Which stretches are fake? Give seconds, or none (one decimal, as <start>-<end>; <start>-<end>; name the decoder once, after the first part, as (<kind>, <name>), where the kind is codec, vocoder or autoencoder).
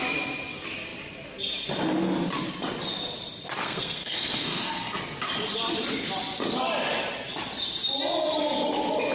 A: 3.6-5.0 (codec, SNAC)